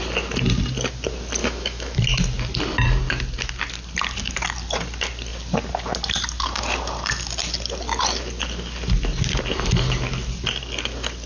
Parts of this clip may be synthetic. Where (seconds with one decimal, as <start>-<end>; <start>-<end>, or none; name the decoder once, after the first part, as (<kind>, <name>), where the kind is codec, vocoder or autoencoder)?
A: 1.4-2.0 (autoencoder, DAC-VAE)